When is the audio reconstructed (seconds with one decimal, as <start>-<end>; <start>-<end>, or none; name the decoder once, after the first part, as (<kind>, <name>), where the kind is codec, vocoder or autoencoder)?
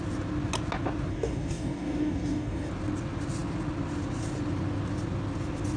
1.1-2.7 (codec, DAC)